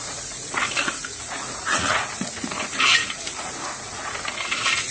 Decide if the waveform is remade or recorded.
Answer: remade